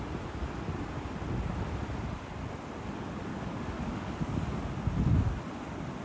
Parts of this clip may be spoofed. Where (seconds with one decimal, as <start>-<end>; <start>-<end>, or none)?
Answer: 3.3-4.4

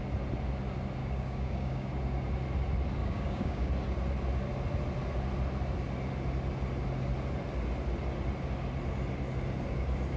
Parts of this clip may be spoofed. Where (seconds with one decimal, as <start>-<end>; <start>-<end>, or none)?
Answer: 1.0-1.9; 3.0-3.7

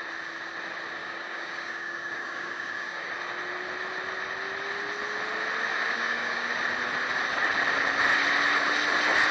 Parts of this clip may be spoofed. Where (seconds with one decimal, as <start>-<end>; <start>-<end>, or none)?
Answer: 1.0-3.1; 5.7-6.5

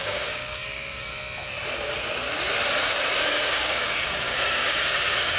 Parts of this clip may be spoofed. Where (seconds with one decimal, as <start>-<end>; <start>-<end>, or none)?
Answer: 0.0-1.1; 3.3-5.4

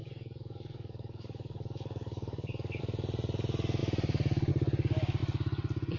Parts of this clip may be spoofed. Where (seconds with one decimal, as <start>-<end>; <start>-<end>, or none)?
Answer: 0.0-2.8

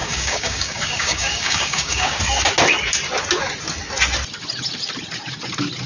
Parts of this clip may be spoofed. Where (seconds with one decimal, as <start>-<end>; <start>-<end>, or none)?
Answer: 0.0-2.2